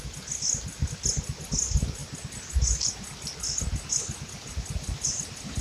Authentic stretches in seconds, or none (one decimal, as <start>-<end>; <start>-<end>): 0.0-5.6